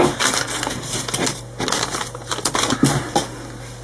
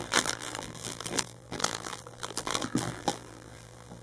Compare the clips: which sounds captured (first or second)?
first